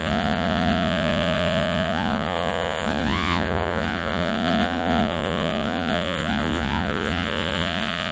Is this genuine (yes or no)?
no